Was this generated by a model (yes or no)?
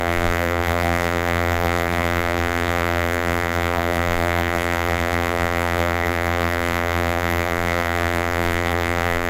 yes